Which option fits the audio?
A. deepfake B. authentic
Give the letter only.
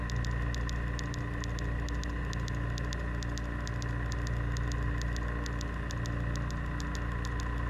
B